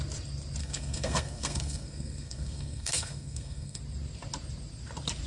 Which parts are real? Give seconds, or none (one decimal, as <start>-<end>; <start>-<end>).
0.0-0.6; 3.8-5.3